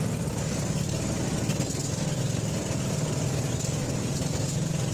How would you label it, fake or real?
real